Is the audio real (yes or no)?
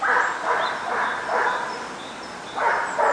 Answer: yes